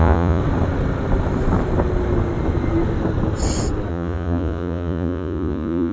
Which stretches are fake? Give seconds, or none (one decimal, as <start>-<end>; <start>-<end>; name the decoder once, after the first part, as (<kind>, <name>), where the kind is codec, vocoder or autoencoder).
0.0-0.4 (vocoder, Vocos); 3.9-5.9